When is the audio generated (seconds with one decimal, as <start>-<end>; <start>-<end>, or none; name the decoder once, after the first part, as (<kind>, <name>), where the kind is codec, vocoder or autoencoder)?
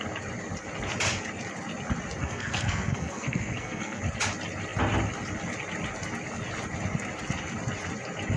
2.2-4.0 (codec, SNAC)